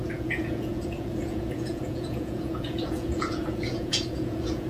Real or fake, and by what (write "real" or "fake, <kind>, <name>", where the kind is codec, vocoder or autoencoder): fake, vocoder, Vocos